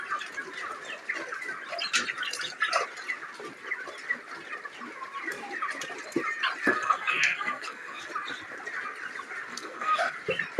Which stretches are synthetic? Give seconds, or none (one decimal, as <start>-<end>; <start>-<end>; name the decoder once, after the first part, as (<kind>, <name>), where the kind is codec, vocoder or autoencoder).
6.6-8.0 (codec, SNAC); 9.5-10.0